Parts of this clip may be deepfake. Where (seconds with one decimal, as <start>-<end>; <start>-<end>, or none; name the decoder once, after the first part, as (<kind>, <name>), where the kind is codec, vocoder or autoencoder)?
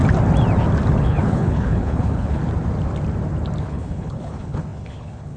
1.0-2.4 (codec, HILCodec); 3.6-5.4